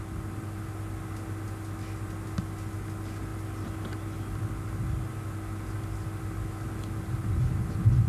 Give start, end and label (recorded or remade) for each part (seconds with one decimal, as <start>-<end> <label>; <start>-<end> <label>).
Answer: 0.0-8.1 recorded